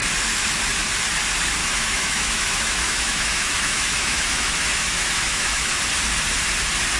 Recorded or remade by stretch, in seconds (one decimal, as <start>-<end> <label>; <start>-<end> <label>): 0.0-1.6 recorded; 1.6-5.8 remade; 5.8-7.0 recorded